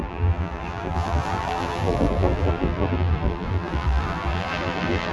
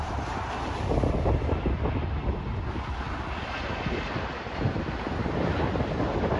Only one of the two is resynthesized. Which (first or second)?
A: first